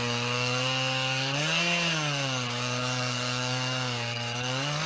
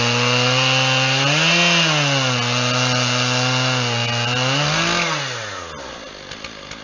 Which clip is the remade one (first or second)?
first